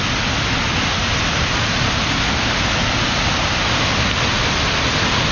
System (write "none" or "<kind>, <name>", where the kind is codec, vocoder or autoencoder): none